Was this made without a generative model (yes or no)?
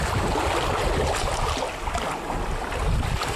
yes